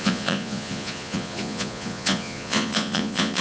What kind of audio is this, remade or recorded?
remade